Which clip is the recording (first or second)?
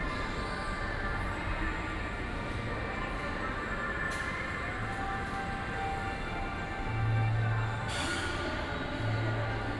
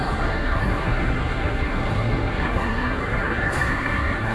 first